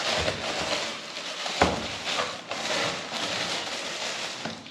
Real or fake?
real